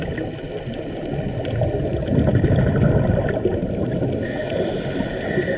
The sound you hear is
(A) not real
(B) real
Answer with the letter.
B